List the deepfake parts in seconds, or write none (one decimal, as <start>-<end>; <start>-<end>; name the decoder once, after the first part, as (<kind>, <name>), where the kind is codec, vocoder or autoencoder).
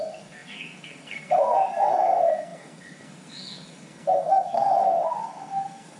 0.0-6.0 (codec, SNAC)